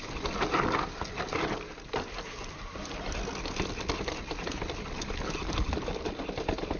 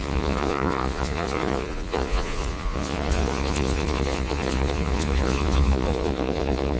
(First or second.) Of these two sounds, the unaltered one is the first